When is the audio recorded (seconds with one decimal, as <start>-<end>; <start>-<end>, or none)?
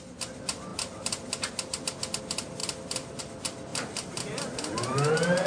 0.0-2.6; 3.2-3.7; 5.1-5.5